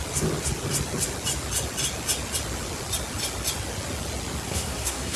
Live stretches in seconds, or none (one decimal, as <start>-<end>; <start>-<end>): 0.0-4.5